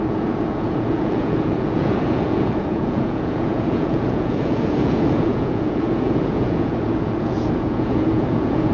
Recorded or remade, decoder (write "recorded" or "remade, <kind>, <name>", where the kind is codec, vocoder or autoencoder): remade, vocoder, Vocos